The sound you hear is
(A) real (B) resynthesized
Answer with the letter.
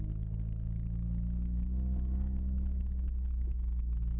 A